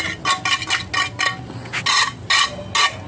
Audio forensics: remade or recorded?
recorded